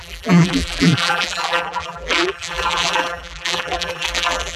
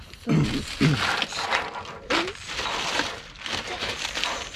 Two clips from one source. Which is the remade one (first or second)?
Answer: first